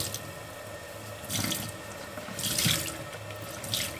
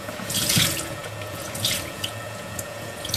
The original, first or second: first